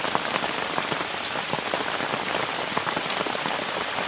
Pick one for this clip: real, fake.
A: real